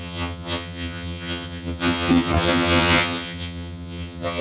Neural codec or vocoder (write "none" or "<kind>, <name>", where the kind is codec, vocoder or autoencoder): vocoder, HiFi-GAN